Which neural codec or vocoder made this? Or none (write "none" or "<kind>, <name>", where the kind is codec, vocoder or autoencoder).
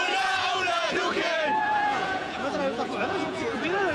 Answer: vocoder, Vocos